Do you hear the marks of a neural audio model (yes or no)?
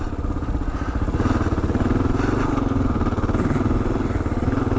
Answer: no